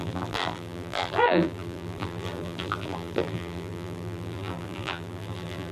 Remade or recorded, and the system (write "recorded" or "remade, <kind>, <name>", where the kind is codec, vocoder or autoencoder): remade, vocoder, BigVGAN v2